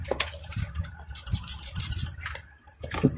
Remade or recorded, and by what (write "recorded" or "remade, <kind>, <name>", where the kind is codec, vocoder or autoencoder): recorded